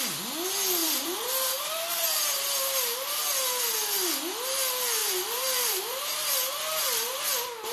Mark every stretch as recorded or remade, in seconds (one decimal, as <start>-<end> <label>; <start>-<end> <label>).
0.0-0.8 recorded; 0.8-3.6 remade; 3.6-5.0 recorded; 5.0-7.2 remade; 7.2-7.7 recorded